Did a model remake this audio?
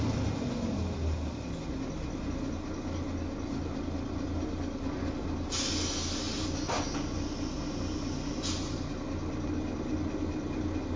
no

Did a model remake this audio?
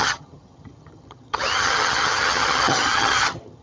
yes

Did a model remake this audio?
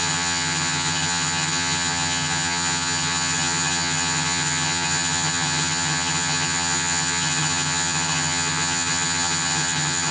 yes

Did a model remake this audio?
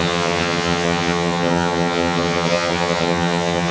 yes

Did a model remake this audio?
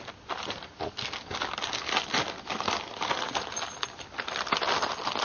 no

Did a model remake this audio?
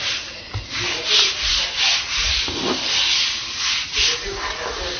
no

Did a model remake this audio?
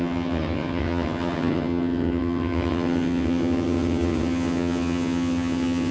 yes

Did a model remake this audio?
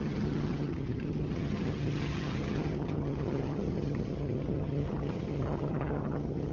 yes